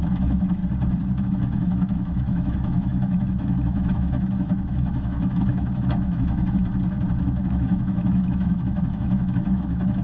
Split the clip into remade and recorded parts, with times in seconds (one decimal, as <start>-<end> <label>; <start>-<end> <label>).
0.0-0.6 remade; 0.6-1.2 recorded; 1.2-6.6 remade; 6.6-7.4 recorded; 7.4-10.0 remade